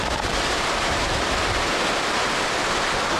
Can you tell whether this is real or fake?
fake